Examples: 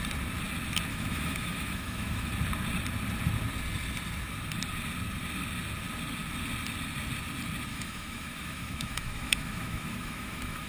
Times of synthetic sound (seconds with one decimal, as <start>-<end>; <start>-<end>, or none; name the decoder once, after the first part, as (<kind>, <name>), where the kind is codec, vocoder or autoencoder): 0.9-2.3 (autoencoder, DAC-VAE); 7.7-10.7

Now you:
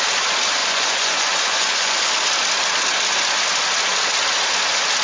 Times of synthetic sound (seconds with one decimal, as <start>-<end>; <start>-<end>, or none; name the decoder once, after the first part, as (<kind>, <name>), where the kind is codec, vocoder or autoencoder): 0.6-2.0 (vocoder, Vocos)

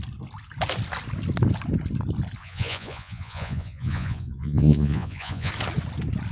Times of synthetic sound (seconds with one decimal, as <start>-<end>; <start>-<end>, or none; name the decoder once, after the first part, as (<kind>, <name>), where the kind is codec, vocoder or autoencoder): 2.4-5.5 (vocoder, Vocos)

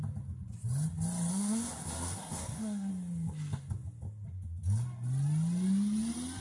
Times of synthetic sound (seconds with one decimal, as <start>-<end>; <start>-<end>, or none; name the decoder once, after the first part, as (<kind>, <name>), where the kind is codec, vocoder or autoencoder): 1.3-2.9 (codec, SNAC)

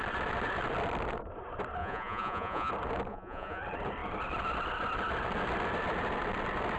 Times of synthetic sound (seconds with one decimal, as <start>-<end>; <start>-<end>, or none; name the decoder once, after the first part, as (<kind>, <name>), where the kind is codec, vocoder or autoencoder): 1.8-2.7 (vocoder, Vocos); 3.1-3.6